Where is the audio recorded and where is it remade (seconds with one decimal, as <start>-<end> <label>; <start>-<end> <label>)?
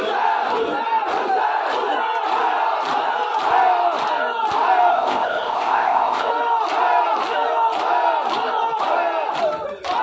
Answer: 0.0-4.9 recorded; 4.9-6.3 remade; 6.3-10.0 recorded